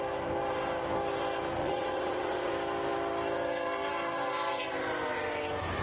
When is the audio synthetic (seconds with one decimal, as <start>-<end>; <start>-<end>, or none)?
1.6-2.5